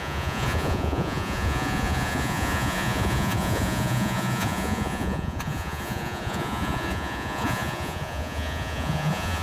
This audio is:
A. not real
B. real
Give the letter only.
A